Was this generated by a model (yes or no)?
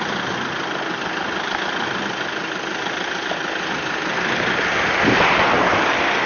no